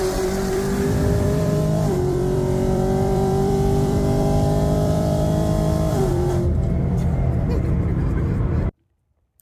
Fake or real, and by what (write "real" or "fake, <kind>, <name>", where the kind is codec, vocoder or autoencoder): fake, vocoder, BigVGAN v2